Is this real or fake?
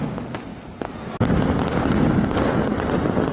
real